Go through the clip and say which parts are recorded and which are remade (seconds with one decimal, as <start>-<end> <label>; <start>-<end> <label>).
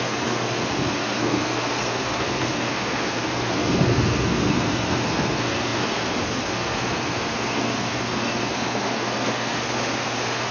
0.0-10.5 remade